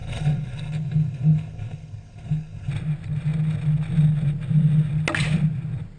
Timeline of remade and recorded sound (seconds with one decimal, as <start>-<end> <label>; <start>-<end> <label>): 0.0-2.7 remade; 2.7-6.0 recorded

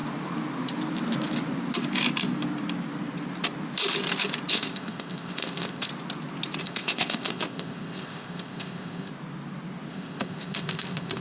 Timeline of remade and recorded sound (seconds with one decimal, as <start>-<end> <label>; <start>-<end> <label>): 0.0-4.5 recorded; 4.5-5.9 remade; 5.9-6.6 recorded; 6.6-9.1 remade; 9.1-9.9 recorded; 9.9-11.2 remade

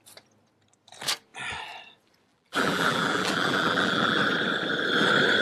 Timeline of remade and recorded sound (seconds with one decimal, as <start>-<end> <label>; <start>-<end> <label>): 0.0-2.3 recorded; 2.3-4.2 remade; 4.2-5.4 recorded

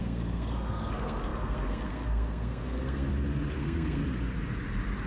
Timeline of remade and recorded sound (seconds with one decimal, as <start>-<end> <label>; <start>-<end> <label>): 0.0-3.1 remade; 3.1-3.6 recorded; 3.6-4.0 remade; 4.0-5.1 recorded

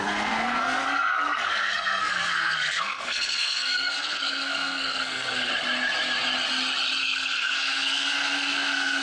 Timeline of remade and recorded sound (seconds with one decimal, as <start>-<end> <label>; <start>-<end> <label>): 0.0-5.5 remade; 5.5-7.0 recorded; 7.0-9.0 remade

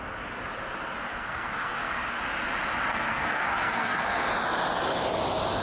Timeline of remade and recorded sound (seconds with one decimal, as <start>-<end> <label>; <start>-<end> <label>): 0.0-1.1 recorded; 1.1-2.2 remade; 2.2-2.9 recorded; 2.9-4.3 remade; 4.3-5.6 recorded

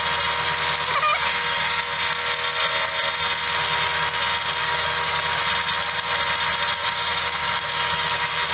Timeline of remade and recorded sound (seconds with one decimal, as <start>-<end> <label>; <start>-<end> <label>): 0.0-1.3 recorded; 1.3-1.8 remade; 1.8-4.6 recorded; 4.6-5.4 remade; 5.4-6.8 recorded; 6.8-8.5 remade

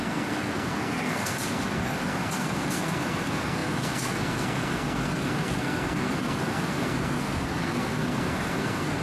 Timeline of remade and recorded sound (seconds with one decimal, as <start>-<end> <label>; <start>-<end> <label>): 0.0-9.0 remade